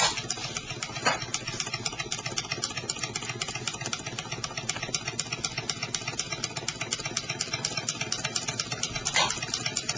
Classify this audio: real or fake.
real